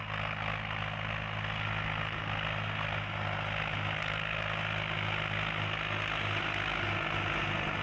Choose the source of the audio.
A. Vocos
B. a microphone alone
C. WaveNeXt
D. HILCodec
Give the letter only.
B